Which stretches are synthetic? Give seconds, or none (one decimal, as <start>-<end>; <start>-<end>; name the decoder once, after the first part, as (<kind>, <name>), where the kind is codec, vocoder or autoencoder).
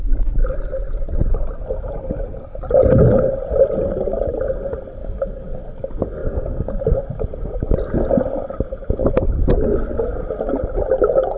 5.0-5.6 (codec, DAC); 6.2-6.8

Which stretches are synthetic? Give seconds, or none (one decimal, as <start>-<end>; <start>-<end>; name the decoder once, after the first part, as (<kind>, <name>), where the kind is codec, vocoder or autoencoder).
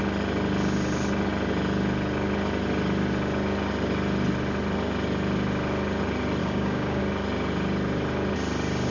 6.4-7.0 (codec, DAC)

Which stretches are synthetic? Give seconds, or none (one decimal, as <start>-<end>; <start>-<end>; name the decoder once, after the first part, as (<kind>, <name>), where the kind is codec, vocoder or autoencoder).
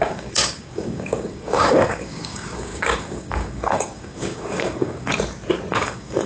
0.0-5.1 (codec, DAC); 5.7-6.3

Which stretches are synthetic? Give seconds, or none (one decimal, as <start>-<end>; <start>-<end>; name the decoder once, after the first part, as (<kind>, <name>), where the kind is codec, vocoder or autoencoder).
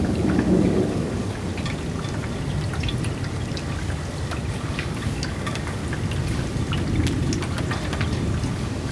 0.0-1.5 (codec, DAC); 4.5-5.8; 8.5-8.9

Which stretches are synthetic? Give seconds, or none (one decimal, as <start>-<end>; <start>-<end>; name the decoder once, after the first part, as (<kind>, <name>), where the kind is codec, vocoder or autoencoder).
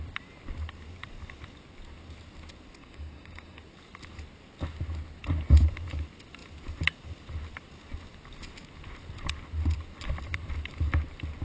2.8-3.6 (codec, DAC)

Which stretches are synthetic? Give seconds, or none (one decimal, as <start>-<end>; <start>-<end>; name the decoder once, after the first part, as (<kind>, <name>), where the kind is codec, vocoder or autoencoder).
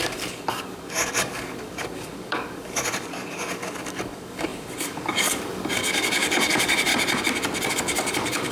0.0-6.9 (codec, DAC); 7.7-8.5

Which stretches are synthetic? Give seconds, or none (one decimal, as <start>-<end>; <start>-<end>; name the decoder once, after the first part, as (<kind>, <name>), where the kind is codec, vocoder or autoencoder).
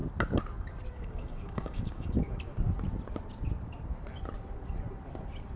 0.9-2.2 (codec, DAC)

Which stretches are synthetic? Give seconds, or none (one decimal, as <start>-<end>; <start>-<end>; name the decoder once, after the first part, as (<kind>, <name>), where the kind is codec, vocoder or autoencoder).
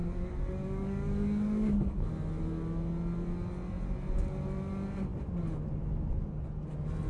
0.0-2.1 (codec, DAC)